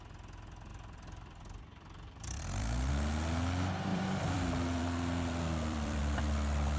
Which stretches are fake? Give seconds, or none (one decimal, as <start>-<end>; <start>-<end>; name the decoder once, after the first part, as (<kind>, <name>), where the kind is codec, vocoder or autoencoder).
0.7-2.9 (vocoder, BigVGAN v2); 3.9-6.2